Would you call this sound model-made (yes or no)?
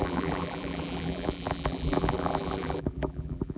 yes